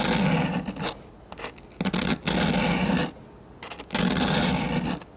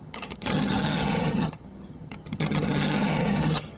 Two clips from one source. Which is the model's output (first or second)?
second